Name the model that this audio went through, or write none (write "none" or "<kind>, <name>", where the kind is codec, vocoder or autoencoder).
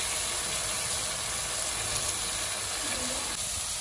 none